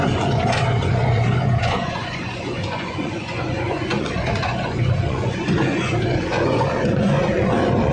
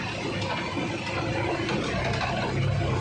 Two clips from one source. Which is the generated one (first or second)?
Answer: first